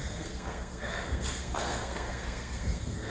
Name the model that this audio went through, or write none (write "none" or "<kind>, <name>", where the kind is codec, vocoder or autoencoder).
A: codec, SNAC